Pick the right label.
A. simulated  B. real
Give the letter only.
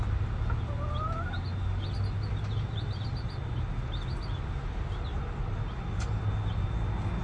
B